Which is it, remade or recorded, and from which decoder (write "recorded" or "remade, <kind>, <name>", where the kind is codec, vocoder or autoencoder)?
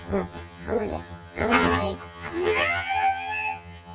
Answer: remade, vocoder, HiFi-GAN